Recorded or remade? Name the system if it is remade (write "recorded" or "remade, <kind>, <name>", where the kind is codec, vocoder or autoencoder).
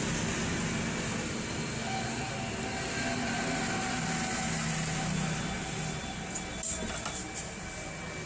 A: recorded